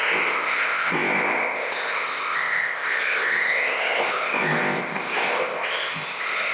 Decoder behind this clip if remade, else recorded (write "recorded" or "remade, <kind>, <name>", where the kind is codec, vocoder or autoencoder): remade, codec, ZipCodec